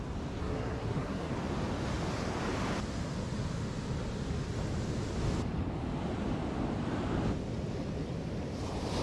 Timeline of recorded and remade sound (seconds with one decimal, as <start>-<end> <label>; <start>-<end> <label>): 0.0-0.4 recorded; 0.4-1.3 remade; 1.3-9.0 recorded